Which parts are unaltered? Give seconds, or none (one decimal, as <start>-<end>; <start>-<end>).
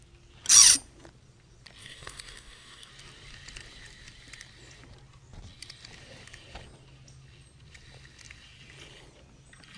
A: 0.0-1.8; 2.9-9.8